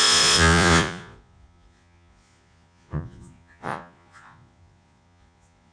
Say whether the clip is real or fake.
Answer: fake